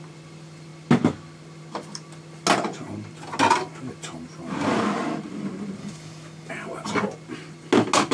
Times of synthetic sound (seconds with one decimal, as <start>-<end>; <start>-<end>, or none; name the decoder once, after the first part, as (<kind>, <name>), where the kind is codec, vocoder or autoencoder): 5.8-6.5 (codec, DAC)